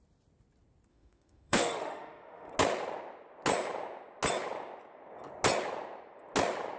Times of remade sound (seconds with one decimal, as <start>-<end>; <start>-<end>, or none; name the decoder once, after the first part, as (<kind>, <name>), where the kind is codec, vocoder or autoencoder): 0.9-2.5 (autoencoder, DAC-VAE)